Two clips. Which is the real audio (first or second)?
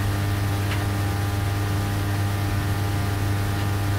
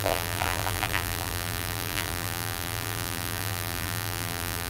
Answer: first